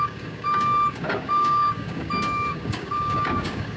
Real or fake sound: fake